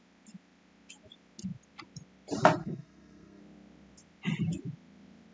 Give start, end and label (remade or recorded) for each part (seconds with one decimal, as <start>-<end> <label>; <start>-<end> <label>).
0.0-2.6 recorded; 2.6-3.4 remade; 3.4-5.3 recorded